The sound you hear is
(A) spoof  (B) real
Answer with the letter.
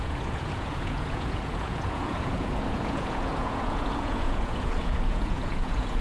A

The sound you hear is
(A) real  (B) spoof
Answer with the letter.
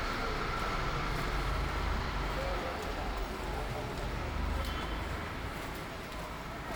A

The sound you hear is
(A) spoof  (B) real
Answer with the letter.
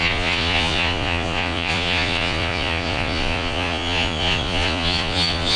A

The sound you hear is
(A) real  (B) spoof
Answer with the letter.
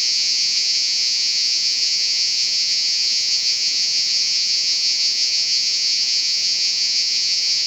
B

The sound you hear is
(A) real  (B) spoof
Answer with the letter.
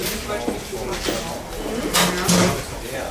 A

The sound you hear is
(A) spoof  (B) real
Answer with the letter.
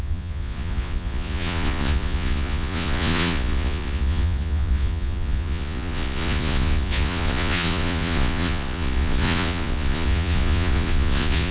A